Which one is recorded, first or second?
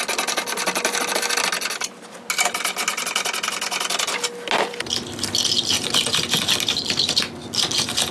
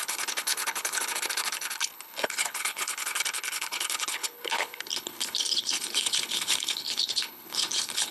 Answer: first